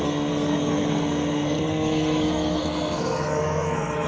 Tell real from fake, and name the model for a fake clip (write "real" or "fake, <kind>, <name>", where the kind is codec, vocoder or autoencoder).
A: fake, codec, SNAC